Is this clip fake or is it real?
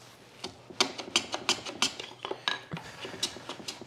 real